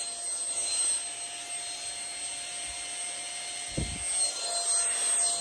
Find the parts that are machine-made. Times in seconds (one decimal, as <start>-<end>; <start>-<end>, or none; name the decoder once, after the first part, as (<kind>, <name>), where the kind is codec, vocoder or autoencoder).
none